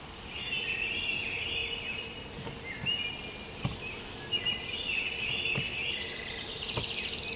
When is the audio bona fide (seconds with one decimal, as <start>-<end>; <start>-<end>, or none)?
0.0-7.4